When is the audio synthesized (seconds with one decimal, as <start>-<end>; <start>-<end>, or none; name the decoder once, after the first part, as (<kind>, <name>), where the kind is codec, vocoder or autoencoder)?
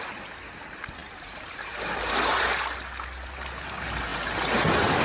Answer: 1.0-2.1 (vocoder, BigVGAN v2)